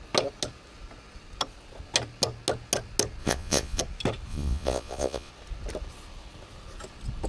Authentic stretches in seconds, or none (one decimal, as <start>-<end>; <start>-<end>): 0.0-3.2; 3.8-4.3; 5.3-7.3

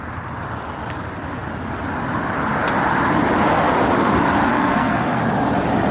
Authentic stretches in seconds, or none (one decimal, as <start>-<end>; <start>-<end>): 0.0-4.5; 5.2-5.9